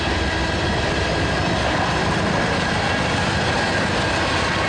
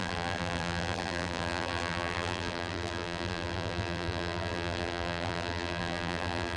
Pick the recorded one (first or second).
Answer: first